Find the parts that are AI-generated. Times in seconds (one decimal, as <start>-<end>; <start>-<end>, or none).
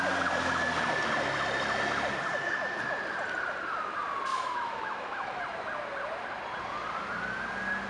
4.3-5.4